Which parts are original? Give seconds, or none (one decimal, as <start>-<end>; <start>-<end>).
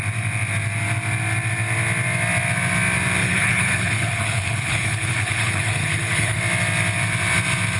0.0-3.2; 6.4-7.8